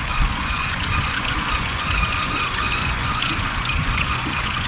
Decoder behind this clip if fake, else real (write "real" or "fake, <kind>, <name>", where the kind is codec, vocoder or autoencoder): fake, vocoder, Vocos